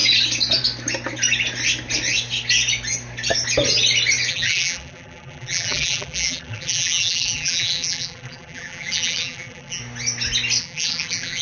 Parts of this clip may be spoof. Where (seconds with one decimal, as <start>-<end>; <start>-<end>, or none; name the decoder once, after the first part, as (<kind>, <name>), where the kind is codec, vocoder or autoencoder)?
4.3-9.8 (vocoder, BigVGAN v2); 10.6-11.4